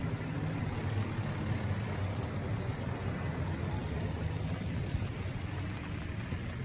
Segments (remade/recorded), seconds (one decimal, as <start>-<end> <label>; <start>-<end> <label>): 0.0-0.6 remade; 0.6-6.6 recorded